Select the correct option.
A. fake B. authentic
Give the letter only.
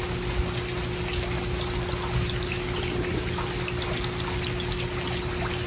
B